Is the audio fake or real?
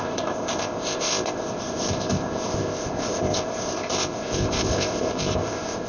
fake